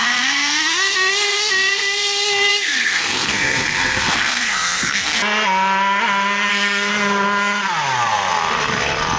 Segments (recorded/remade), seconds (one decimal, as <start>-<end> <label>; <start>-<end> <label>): 0.0-5.2 remade; 5.2-6.5 recorded; 6.5-6.9 remade; 6.9-9.2 recorded